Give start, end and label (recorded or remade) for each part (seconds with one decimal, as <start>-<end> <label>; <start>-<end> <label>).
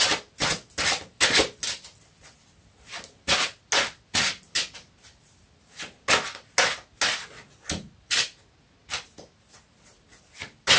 0.0-10.8 recorded